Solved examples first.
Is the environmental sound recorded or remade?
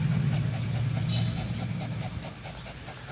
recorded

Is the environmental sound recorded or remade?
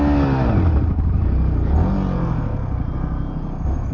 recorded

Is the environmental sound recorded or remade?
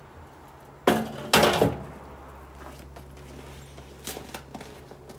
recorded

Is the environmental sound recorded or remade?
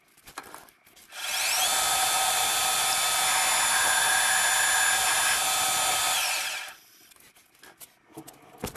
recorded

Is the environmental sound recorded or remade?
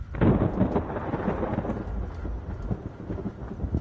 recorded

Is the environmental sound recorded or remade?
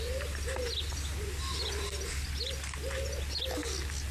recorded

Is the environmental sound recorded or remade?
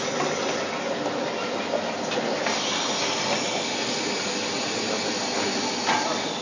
recorded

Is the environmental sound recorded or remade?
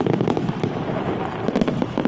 remade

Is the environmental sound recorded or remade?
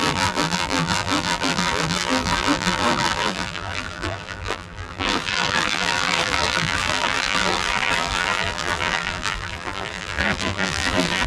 remade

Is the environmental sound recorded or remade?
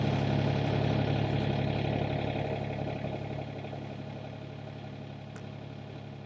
recorded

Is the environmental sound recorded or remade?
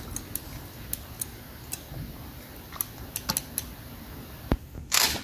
recorded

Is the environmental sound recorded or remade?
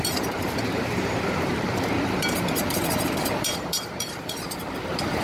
remade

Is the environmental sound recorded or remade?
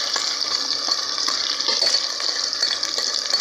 recorded